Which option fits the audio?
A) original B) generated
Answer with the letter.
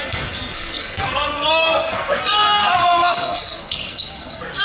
B